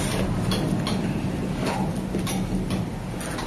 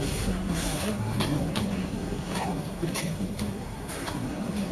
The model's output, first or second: second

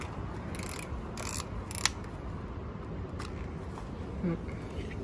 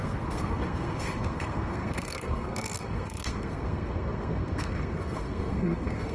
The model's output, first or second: second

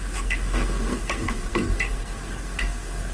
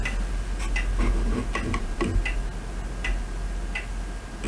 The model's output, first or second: first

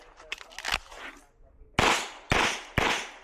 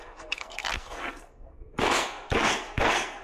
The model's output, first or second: second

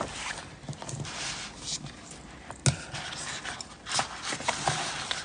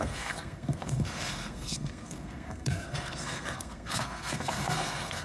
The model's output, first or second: second